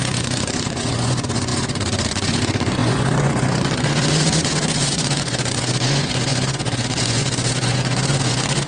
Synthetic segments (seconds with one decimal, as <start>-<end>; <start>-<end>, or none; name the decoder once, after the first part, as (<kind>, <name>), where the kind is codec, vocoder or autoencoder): 0.0-8.7 (vocoder, Vocos)